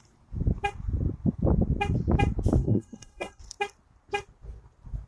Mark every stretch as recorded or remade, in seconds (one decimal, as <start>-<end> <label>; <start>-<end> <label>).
0.0-2.6 recorded; 2.6-3.4 remade; 3.4-5.1 recorded